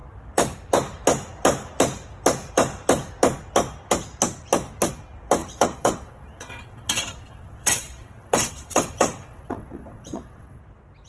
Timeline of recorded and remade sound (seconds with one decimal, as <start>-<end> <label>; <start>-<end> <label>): 0.0-5.4 recorded; 5.4-10.6 remade; 10.6-11.1 recorded